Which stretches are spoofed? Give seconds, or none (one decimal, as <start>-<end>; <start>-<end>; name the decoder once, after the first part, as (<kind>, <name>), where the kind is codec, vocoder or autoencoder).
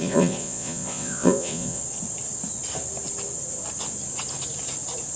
0.0-1.8 (vocoder, Vocos)